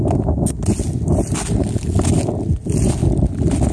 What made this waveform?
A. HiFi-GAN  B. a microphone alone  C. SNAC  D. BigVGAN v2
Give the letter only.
B